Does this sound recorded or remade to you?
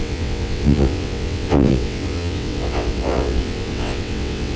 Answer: remade